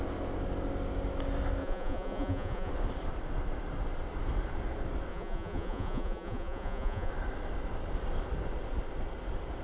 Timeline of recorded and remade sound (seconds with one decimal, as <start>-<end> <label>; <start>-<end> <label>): 0.0-1.6 recorded; 1.6-2.7 remade; 2.7-5.1 recorded; 5.1-7.1 remade; 7.1-9.6 recorded